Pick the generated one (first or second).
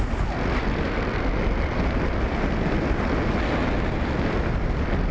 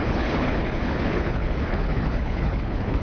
second